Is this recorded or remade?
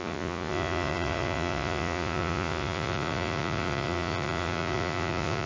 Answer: remade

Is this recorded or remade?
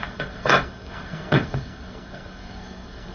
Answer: remade